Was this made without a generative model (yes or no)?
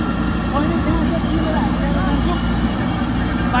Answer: yes